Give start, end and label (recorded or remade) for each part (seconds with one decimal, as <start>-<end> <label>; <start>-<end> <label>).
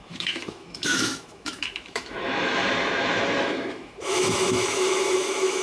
0.0-2.6 remade; 2.6-3.4 recorded; 3.4-5.6 remade